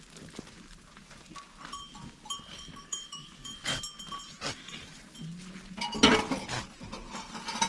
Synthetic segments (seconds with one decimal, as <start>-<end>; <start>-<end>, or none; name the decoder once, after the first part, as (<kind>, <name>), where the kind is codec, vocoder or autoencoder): 2.5-3.8 (codec, DAC)